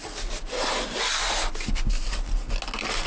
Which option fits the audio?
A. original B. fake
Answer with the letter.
A